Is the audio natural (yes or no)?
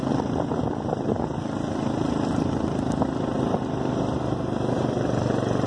yes